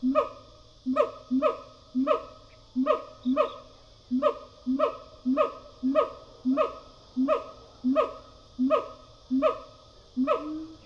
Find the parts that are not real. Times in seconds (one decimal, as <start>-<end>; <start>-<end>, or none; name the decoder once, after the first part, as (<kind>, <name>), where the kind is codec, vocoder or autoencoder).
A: none